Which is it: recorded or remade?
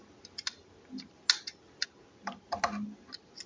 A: recorded